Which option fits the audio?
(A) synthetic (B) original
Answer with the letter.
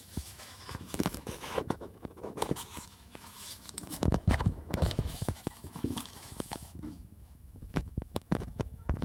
A